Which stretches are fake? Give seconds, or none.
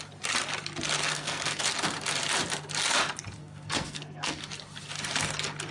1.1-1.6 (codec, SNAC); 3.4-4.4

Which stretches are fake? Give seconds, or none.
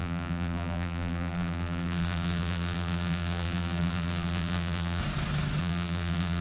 0.0-5.0 (vocoder, BigVGAN v2); 5.6-6.4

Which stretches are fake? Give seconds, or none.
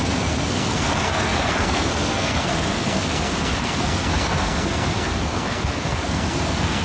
0.0-6.8 (codec, SNAC)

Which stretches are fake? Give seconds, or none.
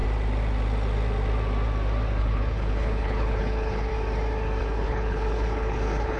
2.2-3.9 (codec, HILCodec); 4.6-6.2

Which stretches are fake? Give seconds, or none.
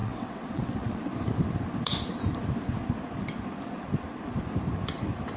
0.0-1.0 (vocoder, WaveNeXt)